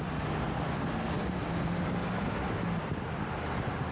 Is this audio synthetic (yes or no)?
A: no